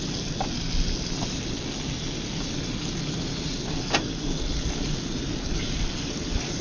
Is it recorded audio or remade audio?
recorded